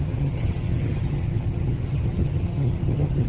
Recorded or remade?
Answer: remade